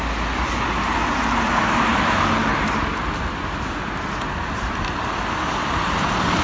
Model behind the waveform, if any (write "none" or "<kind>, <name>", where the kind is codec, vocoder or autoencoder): none